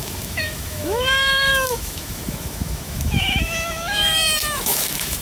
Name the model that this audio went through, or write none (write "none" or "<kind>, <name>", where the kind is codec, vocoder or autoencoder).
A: autoencoder, DAC-VAE